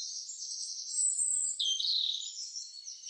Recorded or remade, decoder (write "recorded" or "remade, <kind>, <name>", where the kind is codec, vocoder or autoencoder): recorded